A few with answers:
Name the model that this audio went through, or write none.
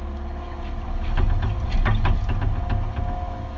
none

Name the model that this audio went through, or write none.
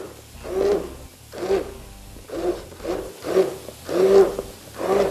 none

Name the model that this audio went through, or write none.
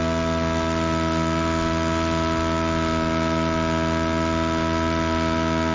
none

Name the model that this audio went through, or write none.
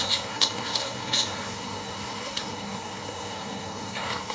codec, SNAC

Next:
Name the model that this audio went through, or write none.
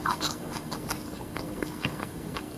codec, SNAC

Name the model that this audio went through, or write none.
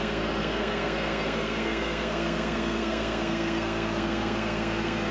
codec, SNAC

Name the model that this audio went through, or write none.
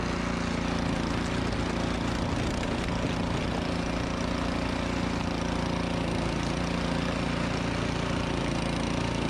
none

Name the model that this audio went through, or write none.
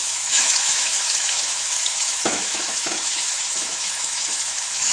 autoencoder, DAC-VAE